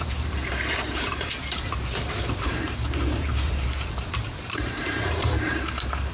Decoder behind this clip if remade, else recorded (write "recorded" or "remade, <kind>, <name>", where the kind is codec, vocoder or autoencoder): remade, vocoder, BigVGAN v2